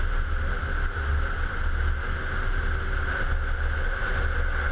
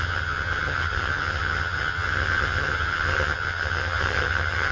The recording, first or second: first